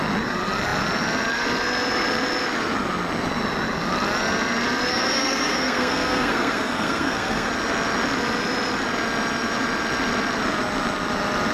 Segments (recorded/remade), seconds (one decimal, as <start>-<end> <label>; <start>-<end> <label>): 0.0-4.9 recorded; 4.9-7.5 remade; 7.5-11.5 recorded